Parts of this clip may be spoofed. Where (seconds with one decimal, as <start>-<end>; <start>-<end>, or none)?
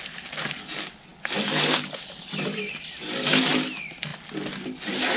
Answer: 1.1-3.5